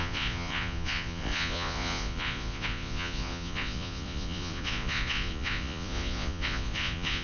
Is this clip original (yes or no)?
no